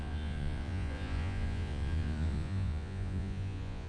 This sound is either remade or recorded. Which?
remade